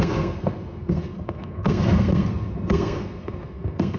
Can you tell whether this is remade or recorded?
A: remade